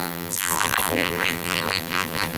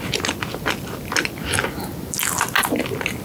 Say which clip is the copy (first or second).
first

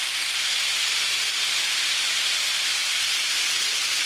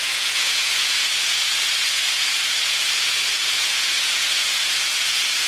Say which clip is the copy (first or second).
second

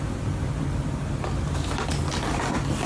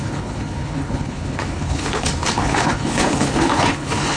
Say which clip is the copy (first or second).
second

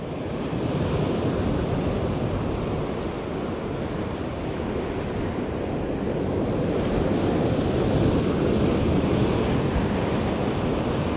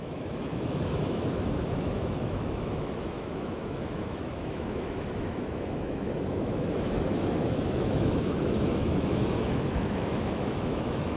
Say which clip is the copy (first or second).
second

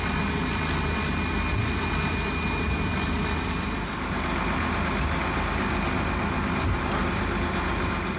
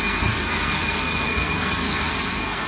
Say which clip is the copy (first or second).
second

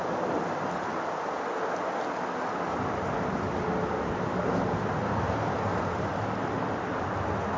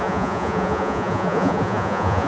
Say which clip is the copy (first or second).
second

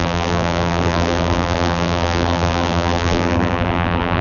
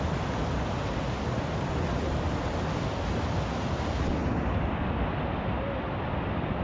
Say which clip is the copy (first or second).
first